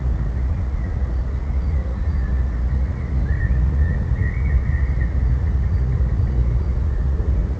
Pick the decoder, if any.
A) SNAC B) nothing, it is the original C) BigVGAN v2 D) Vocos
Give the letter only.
D